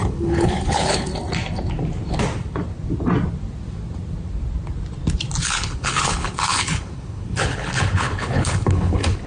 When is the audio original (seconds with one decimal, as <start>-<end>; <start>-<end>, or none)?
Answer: 1.1-5.4